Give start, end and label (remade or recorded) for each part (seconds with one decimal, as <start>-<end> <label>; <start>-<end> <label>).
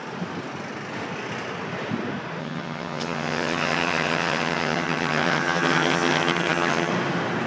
0.0-2.4 recorded; 2.4-6.9 remade; 6.9-7.5 recorded